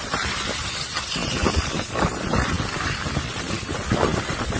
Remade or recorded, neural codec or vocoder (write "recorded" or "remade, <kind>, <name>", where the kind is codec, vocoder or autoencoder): recorded